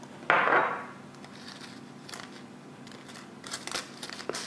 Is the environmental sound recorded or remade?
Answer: recorded